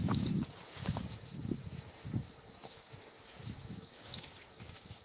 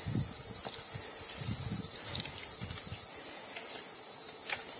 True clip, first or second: second